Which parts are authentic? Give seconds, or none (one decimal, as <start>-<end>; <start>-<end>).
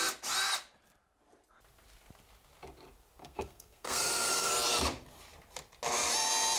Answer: 0.0-3.2; 4.5-6.6